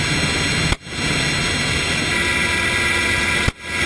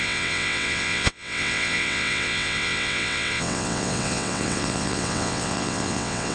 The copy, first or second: second